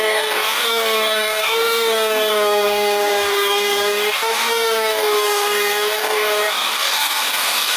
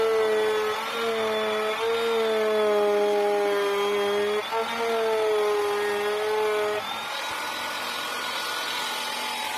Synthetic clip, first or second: first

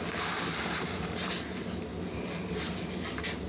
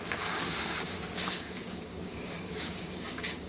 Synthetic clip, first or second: second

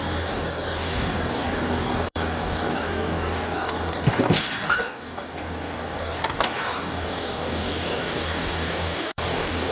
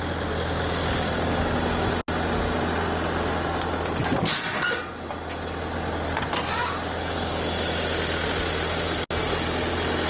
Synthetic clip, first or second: first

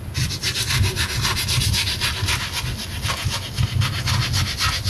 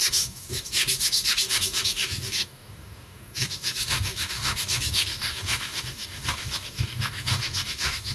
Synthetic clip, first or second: second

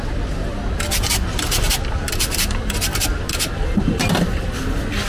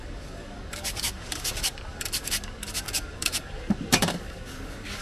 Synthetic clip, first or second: second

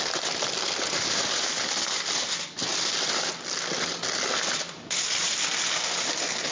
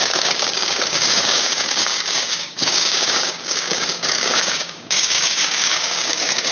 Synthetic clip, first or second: second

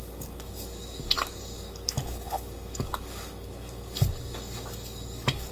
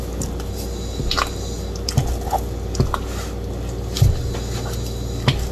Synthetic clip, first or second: first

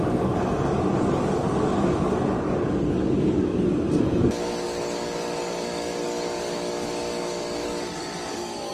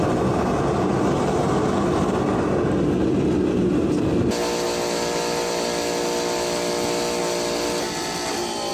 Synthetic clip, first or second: first